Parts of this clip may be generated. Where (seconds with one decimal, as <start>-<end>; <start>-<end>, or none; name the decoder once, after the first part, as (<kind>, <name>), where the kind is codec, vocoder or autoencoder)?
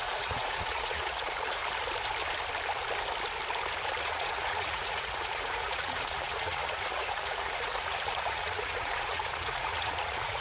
0.0-1.6 (vocoder, Vocos); 4.0-10.4